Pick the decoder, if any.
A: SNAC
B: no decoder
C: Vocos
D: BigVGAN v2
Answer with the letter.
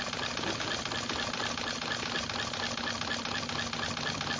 B